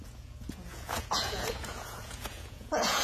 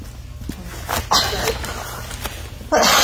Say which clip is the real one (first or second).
second